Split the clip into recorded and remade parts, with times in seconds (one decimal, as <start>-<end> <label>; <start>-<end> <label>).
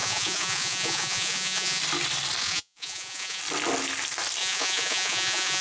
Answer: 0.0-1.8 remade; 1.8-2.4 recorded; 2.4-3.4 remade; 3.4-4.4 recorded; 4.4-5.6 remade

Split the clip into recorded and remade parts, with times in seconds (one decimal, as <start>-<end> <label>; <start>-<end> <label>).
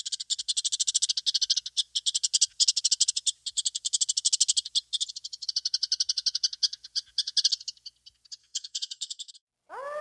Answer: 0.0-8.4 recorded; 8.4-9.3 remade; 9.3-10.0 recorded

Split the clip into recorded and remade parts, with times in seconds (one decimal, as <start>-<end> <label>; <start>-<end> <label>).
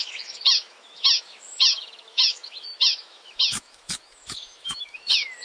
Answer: 0.0-5.4 remade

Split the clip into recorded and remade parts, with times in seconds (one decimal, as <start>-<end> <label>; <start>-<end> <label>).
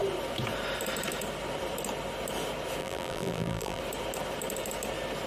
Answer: 0.0-2.8 recorded; 2.8-3.8 remade; 3.8-5.3 recorded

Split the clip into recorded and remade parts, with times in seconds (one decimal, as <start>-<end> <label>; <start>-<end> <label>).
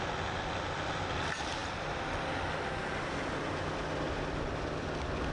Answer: 0.0-5.3 recorded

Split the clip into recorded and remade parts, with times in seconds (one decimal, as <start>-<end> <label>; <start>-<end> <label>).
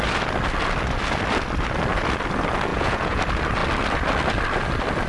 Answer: 0.0-2.7 recorded; 2.7-3.2 remade; 3.2-5.1 recorded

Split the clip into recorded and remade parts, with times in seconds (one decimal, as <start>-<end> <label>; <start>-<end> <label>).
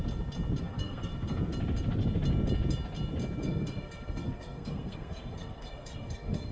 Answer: 0.0-0.6 recorded; 0.6-1.1 remade; 1.1-3.4 recorded; 3.4-6.5 remade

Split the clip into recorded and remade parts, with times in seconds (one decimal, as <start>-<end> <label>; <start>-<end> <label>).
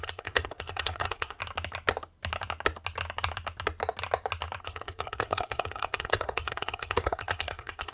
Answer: 0.0-1.4 remade; 1.4-4.6 recorded; 4.6-7.9 remade